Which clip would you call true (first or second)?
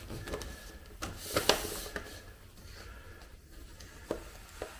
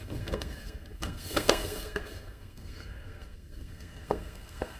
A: first